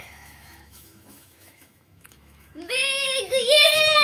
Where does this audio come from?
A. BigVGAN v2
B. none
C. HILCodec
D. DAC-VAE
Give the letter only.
D